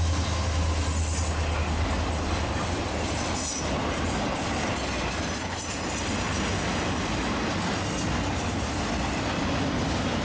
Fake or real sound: real